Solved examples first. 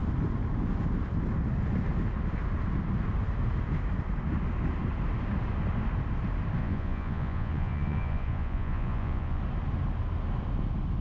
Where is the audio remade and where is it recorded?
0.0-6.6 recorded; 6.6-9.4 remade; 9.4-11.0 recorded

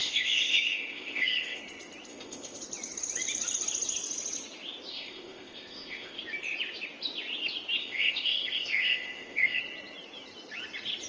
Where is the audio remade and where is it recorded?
0.0-1.6 remade; 1.6-2.1 recorded; 2.1-2.6 remade; 2.6-4.9 recorded; 4.9-6.2 remade; 6.2-7.8 recorded; 7.8-9.6 remade; 9.6-11.1 recorded

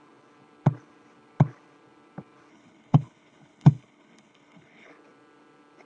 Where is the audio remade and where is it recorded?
0.0-2.5 recorded; 2.5-4.9 remade; 4.9-5.9 recorded

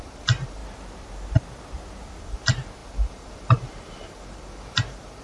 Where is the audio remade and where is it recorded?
0.0-0.6 remade; 0.6-2.2 recorded; 2.2-5.2 remade

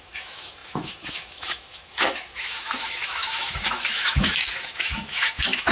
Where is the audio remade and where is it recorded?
0.0-5.7 remade

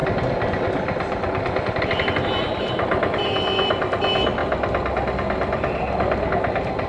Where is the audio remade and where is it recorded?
0.0-6.9 recorded

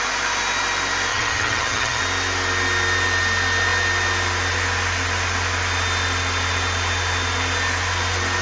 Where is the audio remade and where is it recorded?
0.0-1.1 recorded; 1.1-2.0 remade; 2.0-8.4 recorded

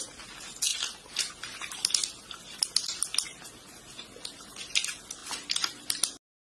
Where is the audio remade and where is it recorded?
0.0-6.5 recorded